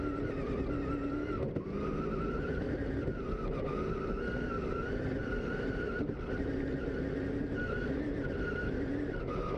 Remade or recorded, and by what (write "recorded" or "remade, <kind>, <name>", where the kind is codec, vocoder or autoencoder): recorded